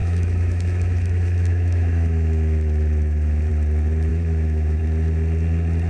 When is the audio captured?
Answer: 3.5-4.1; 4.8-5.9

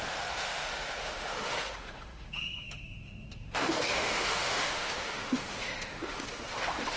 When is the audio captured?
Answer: none

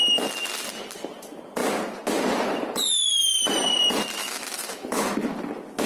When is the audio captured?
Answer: 0.0-4.2; 5.1-5.9

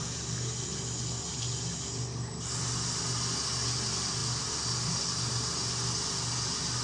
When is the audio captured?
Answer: 0.0-6.8

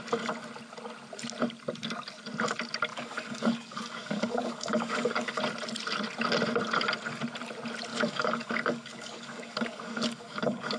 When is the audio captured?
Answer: 0.0-2.9; 5.4-7.9

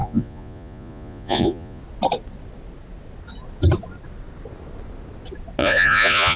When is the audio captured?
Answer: 1.8-5.6

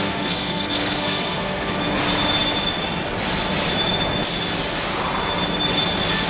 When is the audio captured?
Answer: 1.7-6.3